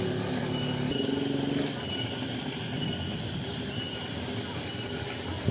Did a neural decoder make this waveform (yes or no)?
no